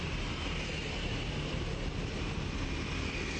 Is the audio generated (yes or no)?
no